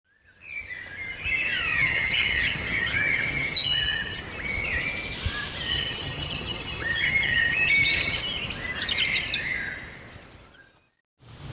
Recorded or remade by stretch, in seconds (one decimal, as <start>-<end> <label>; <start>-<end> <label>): 0.0-1.7 recorded; 1.7-4.2 remade; 4.2-5.7 recorded; 5.7-8.2 remade; 8.2-11.5 recorded